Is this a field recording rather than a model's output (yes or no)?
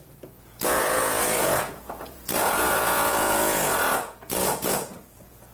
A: no